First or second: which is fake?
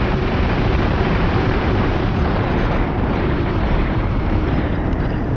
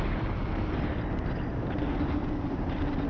first